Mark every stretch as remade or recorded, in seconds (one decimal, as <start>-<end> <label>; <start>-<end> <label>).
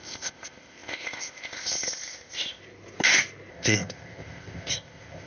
0.0-2.6 remade; 2.6-3.5 recorded; 3.5-5.3 remade